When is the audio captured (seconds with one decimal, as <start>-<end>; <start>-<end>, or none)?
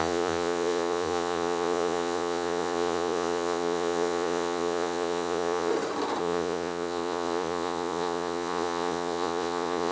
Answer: 5.7-6.2